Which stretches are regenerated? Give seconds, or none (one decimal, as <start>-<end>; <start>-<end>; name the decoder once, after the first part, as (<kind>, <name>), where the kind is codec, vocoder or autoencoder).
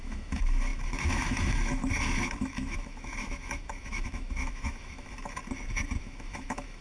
0.0-5.4 (autoencoder, DAC-VAE); 6.0-6.8